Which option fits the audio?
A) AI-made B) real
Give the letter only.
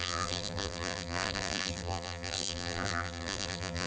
A